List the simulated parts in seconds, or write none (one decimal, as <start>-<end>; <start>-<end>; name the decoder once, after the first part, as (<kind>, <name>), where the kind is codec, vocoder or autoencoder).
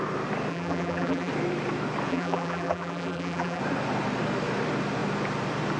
0.5-1.3 (vocoder, BigVGAN v2); 2.1-3.6